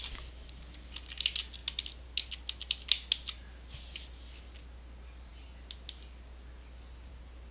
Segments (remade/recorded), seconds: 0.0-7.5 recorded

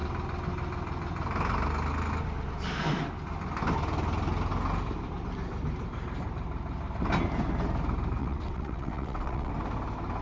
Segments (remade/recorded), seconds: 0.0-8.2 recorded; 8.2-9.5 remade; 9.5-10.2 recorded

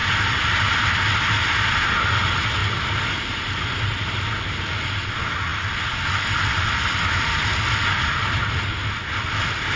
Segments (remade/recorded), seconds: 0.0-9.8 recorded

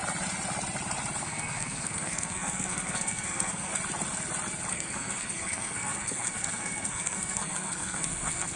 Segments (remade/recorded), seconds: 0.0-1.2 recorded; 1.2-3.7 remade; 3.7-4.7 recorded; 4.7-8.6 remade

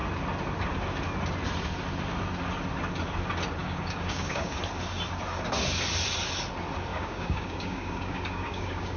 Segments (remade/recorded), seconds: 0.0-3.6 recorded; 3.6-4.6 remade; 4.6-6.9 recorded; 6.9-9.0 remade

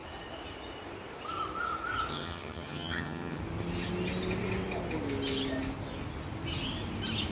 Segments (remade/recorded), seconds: 0.0-2.1 recorded; 2.1-3.4 remade; 3.4-7.3 recorded

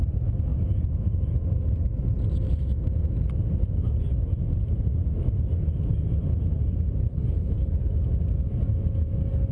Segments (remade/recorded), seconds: 0.0-7.1 recorded; 7.1-7.7 remade; 7.7-9.5 recorded

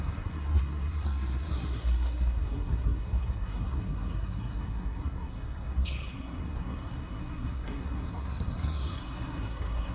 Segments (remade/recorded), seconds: 0.0-9.9 remade